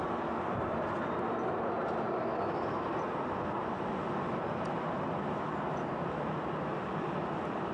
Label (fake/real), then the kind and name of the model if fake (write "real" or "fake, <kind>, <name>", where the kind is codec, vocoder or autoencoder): real